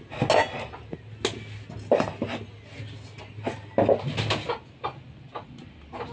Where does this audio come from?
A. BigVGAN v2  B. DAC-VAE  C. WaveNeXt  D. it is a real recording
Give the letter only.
D